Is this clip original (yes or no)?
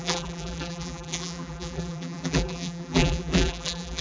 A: no